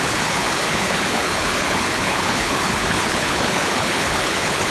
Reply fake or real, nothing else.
fake